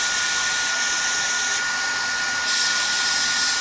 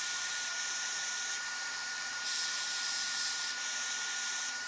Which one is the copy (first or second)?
second